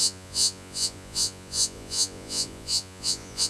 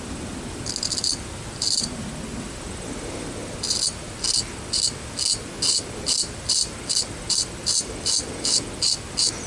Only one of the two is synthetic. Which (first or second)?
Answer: first